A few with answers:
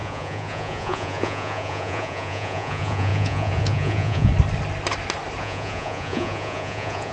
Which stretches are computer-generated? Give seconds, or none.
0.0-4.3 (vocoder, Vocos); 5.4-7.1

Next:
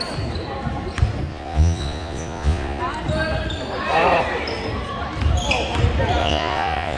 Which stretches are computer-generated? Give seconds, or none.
1.3-2.8 (vocoder, Vocos); 6.2-7.0

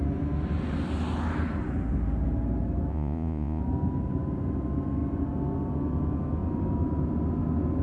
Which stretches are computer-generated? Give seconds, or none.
2.9-3.6 (vocoder, Vocos)

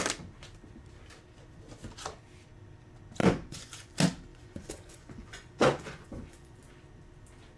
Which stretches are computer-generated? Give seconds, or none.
3.2-3.9 (vocoder, Vocos); 4.3-6.6

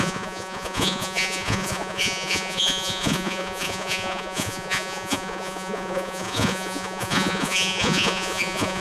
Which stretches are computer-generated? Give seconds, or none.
0.0-8.8 (vocoder, Vocos)

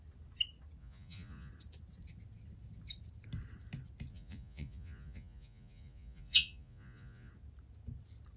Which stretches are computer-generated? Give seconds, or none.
0.8-1.5 (vocoder, Vocos); 4.1-7.3

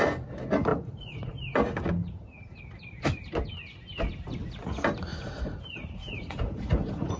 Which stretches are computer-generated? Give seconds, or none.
0.7-1.4 (vocoder, Vocos); 2.0-2.6; 5.1-7.2

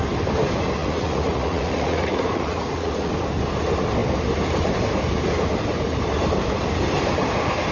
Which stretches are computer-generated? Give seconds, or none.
0.8-3.1 (vocoder, Vocos)